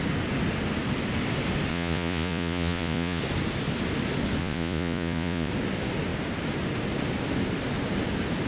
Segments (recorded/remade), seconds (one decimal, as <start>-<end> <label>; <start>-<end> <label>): 0.0-1.7 recorded; 1.7-3.2 remade; 3.2-4.4 recorded; 4.4-5.5 remade; 5.5-8.5 recorded